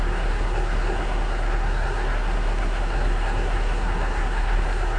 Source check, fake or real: fake